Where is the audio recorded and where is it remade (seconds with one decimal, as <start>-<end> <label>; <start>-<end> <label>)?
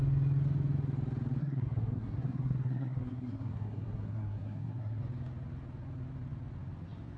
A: 0.0-1.4 recorded; 1.4-5.0 remade; 5.0-7.2 recorded